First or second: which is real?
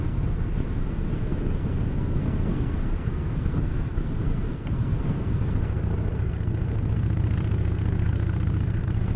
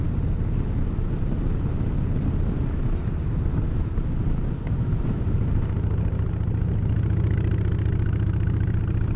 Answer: second